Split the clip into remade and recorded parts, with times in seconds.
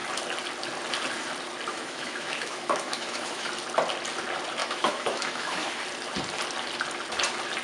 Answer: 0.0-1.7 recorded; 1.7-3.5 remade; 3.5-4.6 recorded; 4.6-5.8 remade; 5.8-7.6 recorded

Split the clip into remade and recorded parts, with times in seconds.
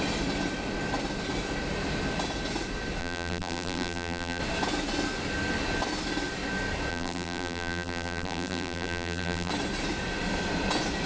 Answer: 0.0-3.0 recorded; 3.0-4.4 remade; 4.4-6.9 recorded; 6.9-9.5 remade; 9.5-11.1 recorded